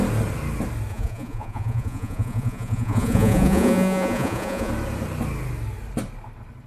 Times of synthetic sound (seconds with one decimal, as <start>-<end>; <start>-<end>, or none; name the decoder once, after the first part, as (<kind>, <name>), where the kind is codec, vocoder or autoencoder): 0.9-4.7 (vocoder, Vocos)